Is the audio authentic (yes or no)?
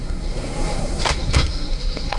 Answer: no